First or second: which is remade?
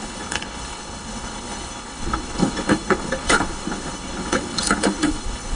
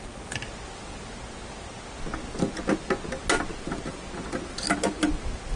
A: first